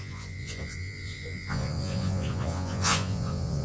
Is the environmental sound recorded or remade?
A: remade